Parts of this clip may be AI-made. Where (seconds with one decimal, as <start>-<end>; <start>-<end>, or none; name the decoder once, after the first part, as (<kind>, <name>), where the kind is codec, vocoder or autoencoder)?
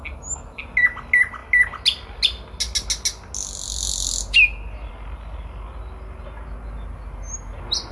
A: none